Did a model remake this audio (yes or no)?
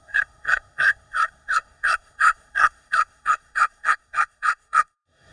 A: yes